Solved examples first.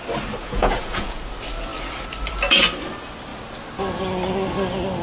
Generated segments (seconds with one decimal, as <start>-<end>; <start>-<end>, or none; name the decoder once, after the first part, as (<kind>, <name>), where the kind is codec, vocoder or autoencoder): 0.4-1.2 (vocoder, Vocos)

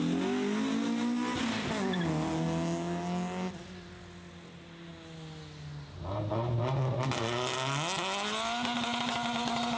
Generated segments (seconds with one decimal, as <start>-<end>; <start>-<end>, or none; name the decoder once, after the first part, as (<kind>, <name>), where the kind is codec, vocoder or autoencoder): none

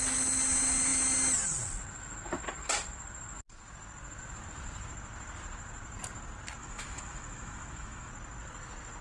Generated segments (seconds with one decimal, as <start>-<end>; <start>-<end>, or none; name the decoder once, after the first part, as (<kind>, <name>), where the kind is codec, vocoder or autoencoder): 6.6-8.1 (autoencoder, DAC-VAE)

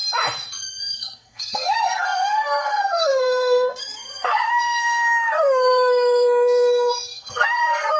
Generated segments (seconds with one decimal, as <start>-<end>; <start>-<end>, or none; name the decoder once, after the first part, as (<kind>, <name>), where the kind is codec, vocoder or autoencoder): 0.7-8.0 (codec, SNAC)

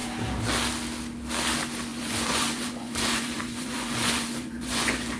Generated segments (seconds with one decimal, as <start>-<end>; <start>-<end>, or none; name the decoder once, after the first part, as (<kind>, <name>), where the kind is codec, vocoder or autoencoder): 1.9-5.2 (vocoder, Vocos)